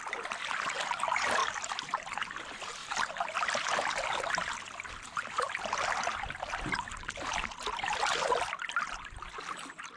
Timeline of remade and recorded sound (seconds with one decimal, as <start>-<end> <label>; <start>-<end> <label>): 0.0-10.0 recorded